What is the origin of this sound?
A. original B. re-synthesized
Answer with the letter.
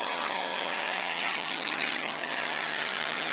B